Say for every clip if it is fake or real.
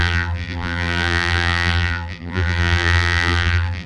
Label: fake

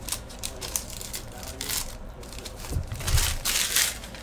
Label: fake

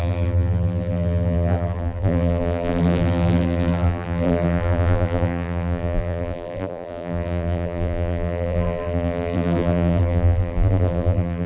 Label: fake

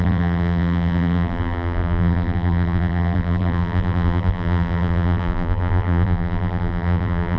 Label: fake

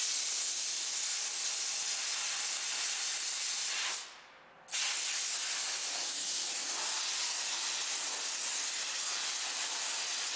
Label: real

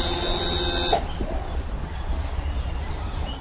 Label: real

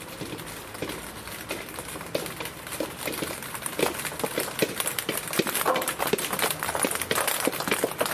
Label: real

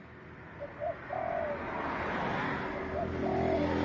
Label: real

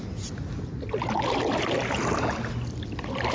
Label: real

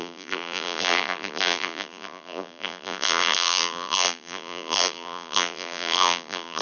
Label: fake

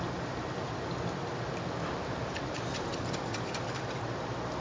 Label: fake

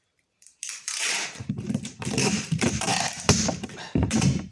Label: fake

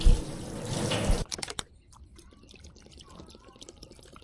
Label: fake